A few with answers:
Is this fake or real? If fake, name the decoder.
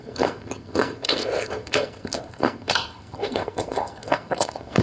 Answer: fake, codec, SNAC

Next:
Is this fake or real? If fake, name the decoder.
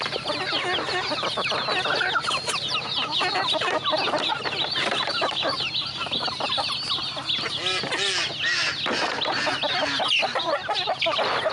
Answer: real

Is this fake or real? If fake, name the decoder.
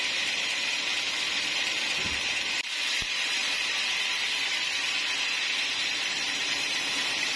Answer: fake, vocoder, BigVGAN v2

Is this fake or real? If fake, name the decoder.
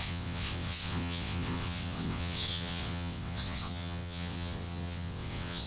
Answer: fake, vocoder, WaveNeXt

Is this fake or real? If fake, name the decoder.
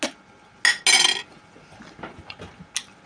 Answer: real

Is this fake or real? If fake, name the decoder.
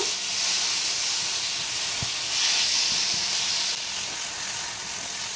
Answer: real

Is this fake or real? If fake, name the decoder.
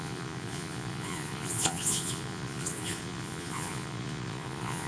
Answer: fake, vocoder, Vocos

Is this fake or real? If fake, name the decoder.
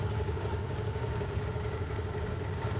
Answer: fake, codec, DAC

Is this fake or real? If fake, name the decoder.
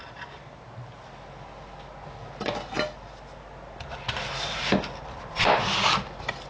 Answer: real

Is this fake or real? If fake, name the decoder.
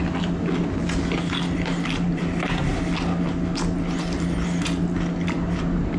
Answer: real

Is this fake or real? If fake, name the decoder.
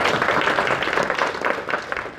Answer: real